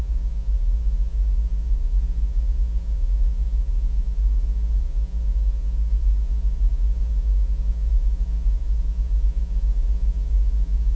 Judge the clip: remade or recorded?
remade